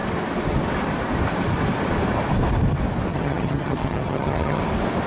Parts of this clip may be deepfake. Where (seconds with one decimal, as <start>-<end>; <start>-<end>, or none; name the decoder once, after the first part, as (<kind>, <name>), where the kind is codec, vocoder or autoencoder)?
3.1-4.6 (vocoder, HiFi-GAN)